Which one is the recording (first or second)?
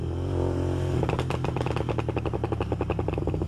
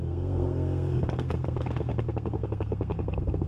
first